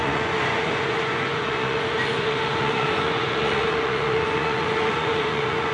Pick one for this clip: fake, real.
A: fake